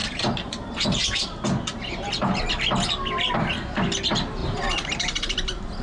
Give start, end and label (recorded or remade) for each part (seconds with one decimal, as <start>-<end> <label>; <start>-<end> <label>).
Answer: 0.0-4.4 recorded; 4.4-5.8 remade

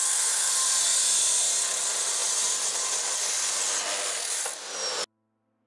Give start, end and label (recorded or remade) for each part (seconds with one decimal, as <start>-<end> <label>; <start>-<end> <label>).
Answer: 0.0-0.5 remade; 0.5-5.7 recorded

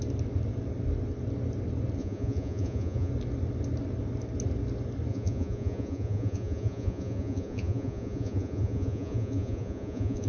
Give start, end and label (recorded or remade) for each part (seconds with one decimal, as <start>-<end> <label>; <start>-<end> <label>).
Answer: 0.0-2.0 recorded; 2.0-3.1 remade; 3.1-5.1 recorded; 5.1-10.3 remade

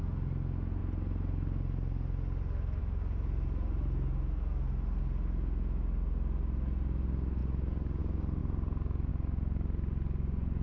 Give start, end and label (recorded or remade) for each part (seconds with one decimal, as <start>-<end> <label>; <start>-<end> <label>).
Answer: 0.0-10.6 recorded

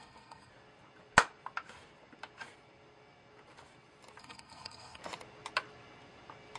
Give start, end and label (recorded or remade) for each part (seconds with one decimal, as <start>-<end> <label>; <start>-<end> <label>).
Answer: 0.0-0.5 remade; 0.5-4.2 recorded; 4.2-5.0 remade; 5.0-6.6 recorded

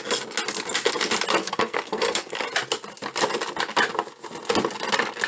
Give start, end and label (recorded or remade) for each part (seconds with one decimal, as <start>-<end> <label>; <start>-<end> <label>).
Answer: 0.0-1.4 recorded; 1.4-2.3 remade; 2.3-5.3 recorded

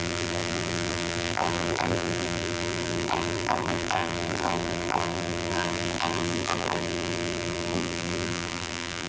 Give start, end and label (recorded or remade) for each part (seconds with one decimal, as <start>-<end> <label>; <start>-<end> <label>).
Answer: 0.0-9.1 remade